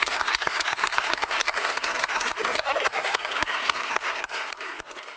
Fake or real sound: fake